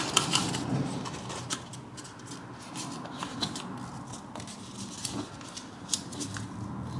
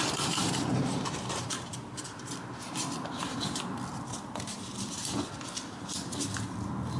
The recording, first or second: first